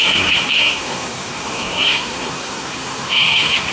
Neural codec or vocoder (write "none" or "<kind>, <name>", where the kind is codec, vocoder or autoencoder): codec, SNAC